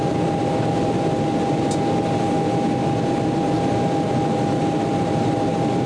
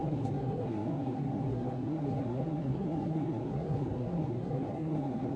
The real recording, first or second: first